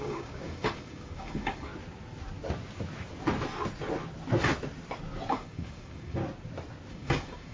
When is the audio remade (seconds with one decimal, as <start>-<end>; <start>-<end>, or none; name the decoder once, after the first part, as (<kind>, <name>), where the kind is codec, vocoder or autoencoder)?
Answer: 0.0-1.7 (codec, DAC); 5.3-6.2; 6.9-7.5